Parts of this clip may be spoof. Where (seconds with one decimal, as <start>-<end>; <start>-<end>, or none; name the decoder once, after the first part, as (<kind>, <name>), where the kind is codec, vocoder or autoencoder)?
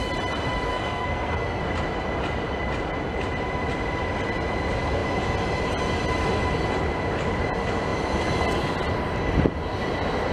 0.7-1.6 (codec, SNAC)